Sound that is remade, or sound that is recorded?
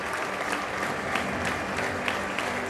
recorded